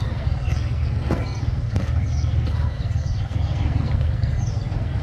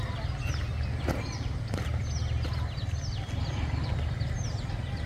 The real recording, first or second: second